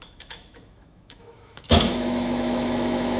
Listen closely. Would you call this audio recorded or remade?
remade